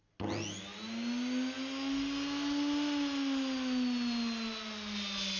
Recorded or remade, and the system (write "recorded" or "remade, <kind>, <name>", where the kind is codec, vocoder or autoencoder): recorded